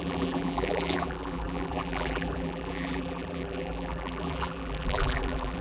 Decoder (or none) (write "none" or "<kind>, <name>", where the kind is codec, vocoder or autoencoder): vocoder, BigVGAN v2